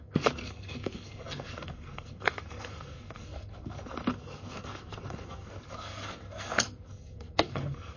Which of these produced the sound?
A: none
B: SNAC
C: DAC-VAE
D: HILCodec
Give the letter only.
B